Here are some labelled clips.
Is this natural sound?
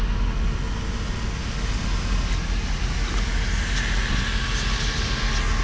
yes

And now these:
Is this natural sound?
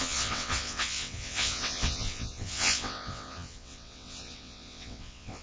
no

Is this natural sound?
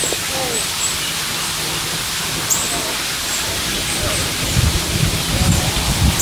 no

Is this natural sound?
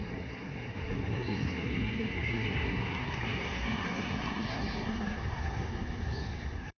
no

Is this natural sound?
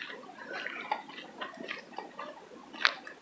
yes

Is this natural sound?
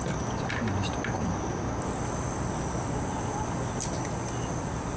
yes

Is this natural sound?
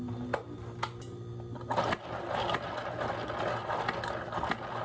yes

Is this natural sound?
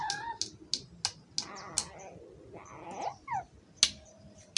yes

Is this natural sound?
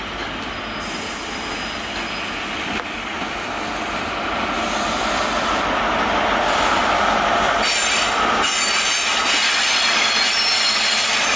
yes